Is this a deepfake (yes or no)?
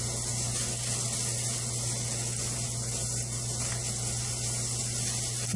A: no